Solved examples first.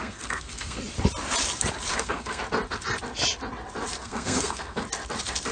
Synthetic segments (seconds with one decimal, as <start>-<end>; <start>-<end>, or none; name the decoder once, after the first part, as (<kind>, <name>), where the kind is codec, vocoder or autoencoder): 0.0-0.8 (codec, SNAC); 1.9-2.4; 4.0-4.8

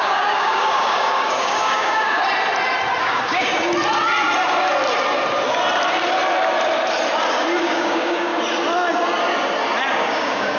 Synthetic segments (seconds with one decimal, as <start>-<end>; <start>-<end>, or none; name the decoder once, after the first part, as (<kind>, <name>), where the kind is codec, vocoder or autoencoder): 0.0-2.2 (codec, DAC); 3.0-3.5; 7.6-8.3; 9.9-10.6

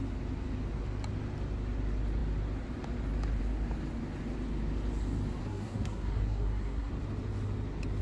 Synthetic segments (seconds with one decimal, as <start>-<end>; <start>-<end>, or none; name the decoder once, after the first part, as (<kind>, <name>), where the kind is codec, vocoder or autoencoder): 5.4-6.9 (codec, SNAC)

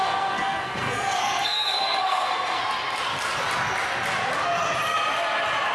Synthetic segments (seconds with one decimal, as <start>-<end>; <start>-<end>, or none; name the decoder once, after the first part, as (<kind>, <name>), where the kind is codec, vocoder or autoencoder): 0.0-2.6 (codec, SNAC)

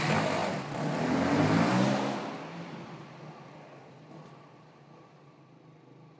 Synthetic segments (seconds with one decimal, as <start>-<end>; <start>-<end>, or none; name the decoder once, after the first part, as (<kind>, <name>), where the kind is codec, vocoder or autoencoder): none

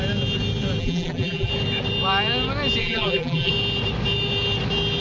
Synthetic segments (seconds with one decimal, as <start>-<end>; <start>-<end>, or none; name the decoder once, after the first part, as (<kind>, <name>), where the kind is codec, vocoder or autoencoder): 0.8-1.5 (vocoder, BigVGAN v2); 2.8-3.5

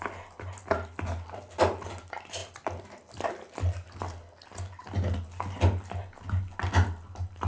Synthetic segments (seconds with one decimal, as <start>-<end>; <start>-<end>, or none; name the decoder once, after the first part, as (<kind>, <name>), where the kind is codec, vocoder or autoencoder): none

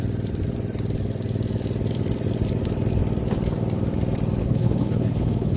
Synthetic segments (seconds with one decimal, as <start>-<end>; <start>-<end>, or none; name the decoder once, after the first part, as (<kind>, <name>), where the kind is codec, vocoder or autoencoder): 4.4-5.6 (codec, HILCodec)